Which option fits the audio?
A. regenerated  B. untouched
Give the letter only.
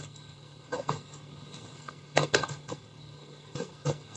A